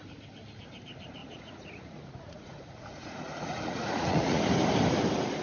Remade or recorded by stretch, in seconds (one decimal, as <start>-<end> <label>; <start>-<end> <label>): 0.0-1.2 recorded; 1.2-4.4 remade; 4.4-5.4 recorded